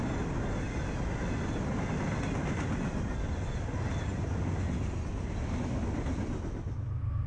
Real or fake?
real